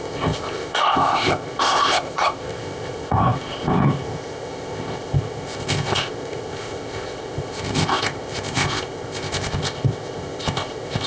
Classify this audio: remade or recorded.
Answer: remade